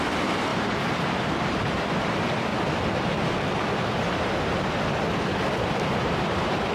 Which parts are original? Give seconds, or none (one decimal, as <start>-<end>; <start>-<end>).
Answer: 2.5-6.0